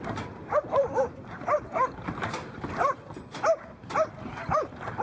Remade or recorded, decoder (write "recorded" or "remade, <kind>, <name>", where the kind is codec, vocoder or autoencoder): recorded